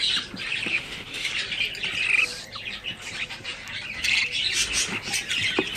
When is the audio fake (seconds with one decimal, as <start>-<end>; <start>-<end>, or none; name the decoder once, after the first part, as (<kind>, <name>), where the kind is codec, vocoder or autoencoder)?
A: 0.7-1.3 (autoencoder, DAC-VAE)